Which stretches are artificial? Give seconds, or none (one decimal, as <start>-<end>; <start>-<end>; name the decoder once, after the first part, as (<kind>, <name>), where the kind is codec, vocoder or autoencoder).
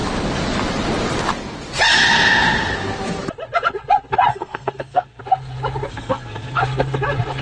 4.3-5.2 (codec, SNAC); 5.9-6.6